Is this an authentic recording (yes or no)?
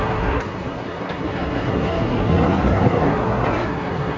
no